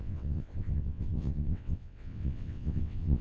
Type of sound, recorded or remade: remade